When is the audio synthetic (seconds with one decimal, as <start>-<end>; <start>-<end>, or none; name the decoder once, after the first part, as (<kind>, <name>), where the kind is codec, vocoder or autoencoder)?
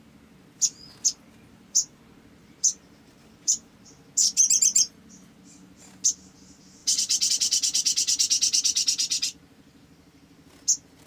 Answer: 1.5-2.0 (vocoder, BigVGAN v2); 2.4-3.7